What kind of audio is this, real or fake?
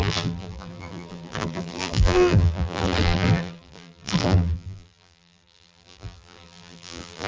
fake